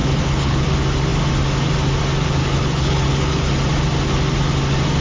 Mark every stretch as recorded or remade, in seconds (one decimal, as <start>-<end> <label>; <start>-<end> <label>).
0.0-0.7 remade; 0.7-2.4 recorded; 2.4-3.5 remade; 3.5-5.0 recorded